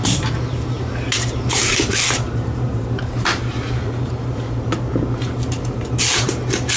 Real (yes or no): no